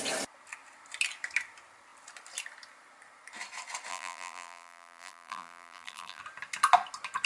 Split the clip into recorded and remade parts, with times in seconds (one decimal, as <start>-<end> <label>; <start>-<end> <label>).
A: 0.0-3.9 recorded; 3.9-6.2 remade; 6.2-7.2 recorded